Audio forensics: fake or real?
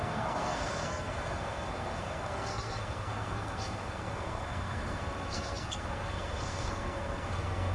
fake